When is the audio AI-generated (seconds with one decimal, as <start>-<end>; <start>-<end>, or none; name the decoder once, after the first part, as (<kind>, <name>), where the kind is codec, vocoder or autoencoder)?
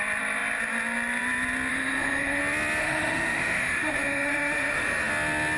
1.7-2.4 (autoencoder, DAC-VAE); 2.8-5.1